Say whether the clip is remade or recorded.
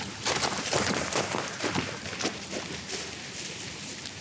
remade